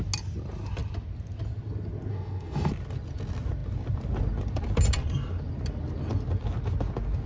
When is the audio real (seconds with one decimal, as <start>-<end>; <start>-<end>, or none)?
0.0-2.1; 2.7-7.3